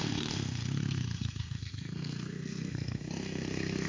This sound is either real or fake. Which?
fake